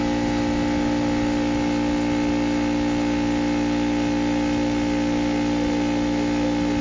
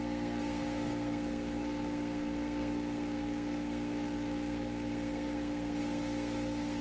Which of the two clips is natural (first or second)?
first